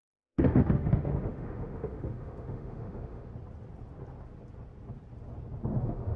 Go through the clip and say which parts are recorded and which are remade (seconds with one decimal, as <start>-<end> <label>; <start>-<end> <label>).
0.0-3.3 remade; 3.3-5.8 recorded; 5.8-6.2 remade